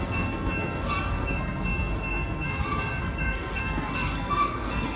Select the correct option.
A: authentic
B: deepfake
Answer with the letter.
B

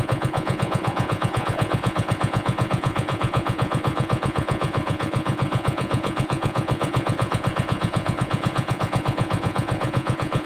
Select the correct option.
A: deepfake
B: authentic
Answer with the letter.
A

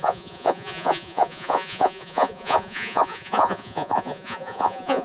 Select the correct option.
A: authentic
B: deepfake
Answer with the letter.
B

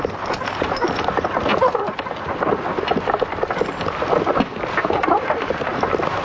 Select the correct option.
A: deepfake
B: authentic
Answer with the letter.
B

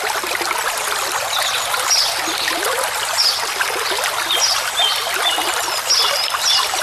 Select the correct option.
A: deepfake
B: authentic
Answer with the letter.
B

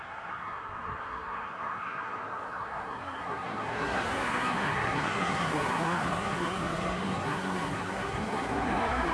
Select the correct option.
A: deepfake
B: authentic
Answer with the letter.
A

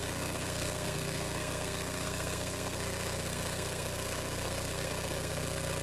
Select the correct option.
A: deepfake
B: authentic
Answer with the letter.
A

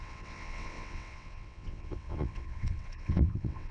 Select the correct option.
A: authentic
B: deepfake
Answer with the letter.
B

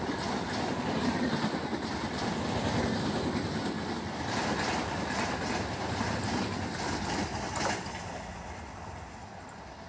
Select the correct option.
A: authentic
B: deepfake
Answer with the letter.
A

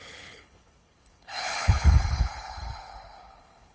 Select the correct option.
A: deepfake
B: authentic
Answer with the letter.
A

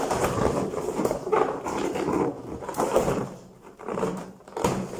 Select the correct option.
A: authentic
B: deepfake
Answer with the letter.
B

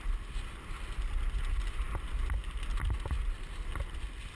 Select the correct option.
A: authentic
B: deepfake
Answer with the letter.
A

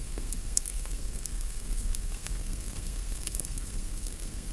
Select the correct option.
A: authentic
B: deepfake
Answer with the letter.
B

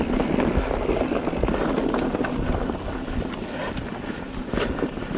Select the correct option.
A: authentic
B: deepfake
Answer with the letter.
A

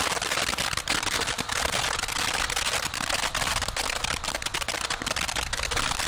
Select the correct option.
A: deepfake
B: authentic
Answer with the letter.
B